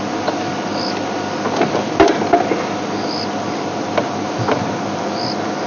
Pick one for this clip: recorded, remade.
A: recorded